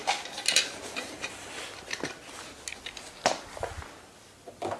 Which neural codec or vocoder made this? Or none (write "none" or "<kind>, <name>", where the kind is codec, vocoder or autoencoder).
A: none